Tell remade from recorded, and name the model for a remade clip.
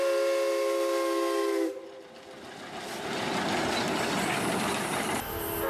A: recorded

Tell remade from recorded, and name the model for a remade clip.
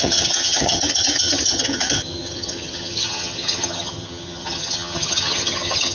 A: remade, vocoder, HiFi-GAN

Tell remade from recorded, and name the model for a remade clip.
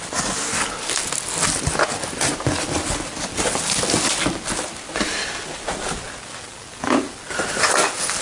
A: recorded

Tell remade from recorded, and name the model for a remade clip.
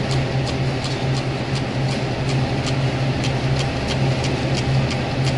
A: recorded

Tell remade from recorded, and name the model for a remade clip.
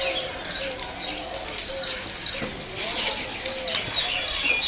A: recorded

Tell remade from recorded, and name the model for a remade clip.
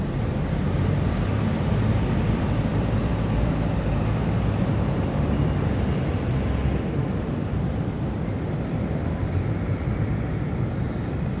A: remade, vocoder, BigVGAN v2